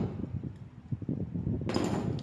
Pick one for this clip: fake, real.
real